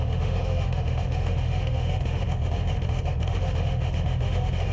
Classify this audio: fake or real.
fake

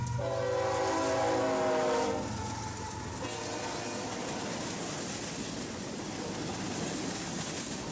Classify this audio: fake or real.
real